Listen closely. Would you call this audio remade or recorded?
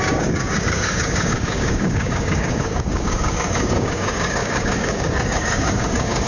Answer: remade